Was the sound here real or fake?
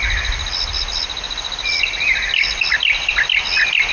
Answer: real